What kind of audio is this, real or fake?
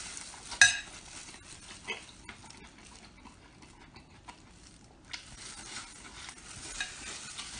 real